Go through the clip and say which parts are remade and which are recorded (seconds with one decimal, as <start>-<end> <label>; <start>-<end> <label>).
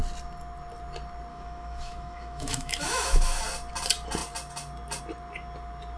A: 0.0-1.3 recorded; 1.3-3.4 remade; 3.4-6.0 recorded